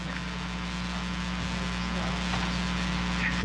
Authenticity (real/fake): real